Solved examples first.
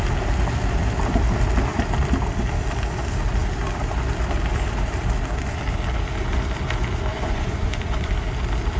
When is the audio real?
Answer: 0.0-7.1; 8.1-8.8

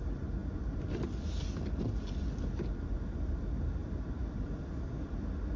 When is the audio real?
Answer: 0.0-5.6

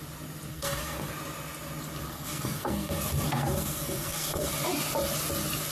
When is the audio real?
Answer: 0.0-0.5; 1.1-2.0; 4.5-5.7

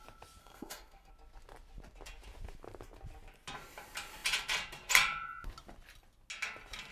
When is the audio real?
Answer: 0.0-0.4; 1.1-6.9

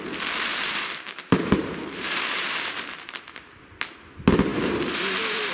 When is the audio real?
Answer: 0.0-0.5; 3.7-4.5

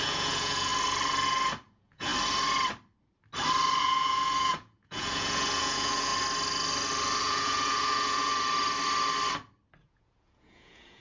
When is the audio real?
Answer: 0.7-1.5; 2.1-3.8; 6.1-7.2; 8.3-9.8